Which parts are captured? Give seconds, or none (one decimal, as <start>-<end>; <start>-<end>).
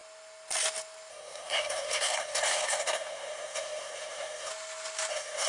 0.0-1.1; 4.5-5.1